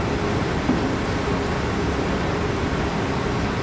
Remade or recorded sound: recorded